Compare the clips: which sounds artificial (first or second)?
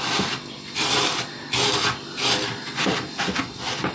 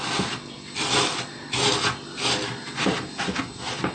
first